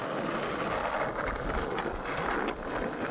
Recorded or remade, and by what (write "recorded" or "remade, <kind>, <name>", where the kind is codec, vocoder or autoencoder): recorded